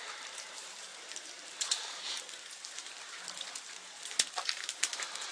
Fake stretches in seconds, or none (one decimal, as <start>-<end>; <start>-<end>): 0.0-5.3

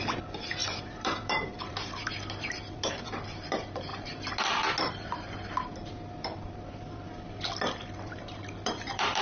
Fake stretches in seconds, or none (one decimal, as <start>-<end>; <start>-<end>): 0.0-3.9; 4.9-9.2

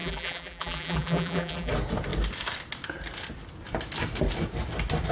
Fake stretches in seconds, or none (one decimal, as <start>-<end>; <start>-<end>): 0.0-1.7

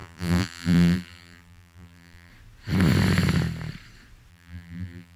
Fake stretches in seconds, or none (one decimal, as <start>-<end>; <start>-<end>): 0.0-2.3; 4.3-5.2

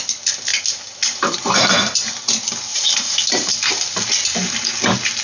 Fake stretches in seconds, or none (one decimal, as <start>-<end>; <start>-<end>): 0.5-2.1; 2.7-3.7

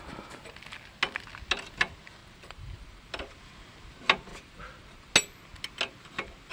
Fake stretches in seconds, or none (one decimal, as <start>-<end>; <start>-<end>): 2.2-3.1; 4.3-5.1

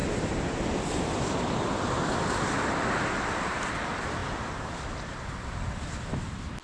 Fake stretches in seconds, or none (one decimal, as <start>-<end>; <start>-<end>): 4.2-6.0

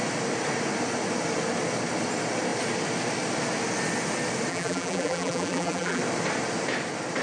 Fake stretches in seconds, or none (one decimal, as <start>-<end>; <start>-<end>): 4.5-6.0